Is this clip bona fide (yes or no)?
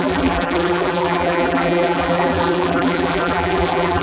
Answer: no